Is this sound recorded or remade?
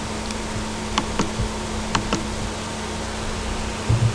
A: recorded